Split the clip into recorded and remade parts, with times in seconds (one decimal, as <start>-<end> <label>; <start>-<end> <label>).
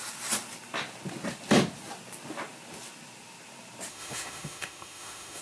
0.0-3.9 recorded; 3.9-5.4 remade